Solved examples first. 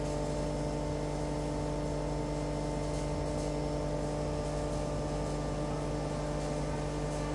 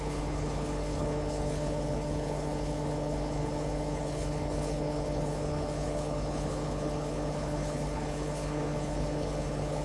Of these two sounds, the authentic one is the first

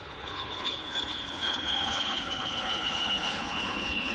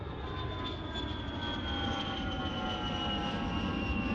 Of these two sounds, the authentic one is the second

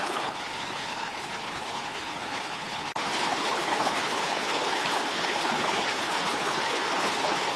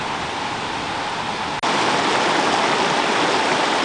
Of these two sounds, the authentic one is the second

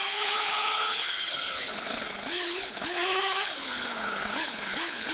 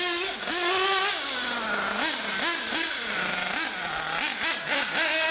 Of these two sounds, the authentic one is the second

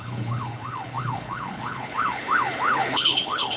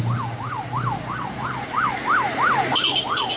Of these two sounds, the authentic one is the second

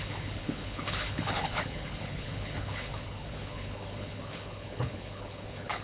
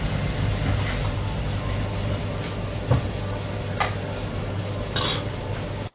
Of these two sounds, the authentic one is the second